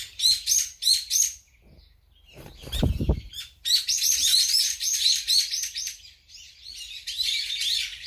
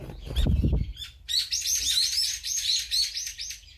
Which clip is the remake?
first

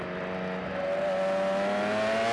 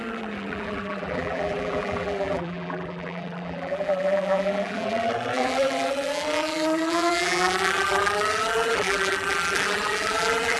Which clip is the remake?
second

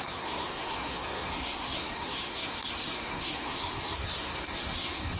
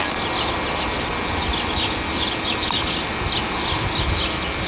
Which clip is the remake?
first